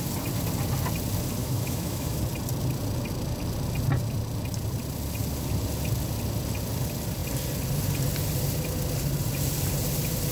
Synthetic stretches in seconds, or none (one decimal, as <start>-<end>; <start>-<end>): 1.4-2.2